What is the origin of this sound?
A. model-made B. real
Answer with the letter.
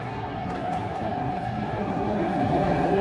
A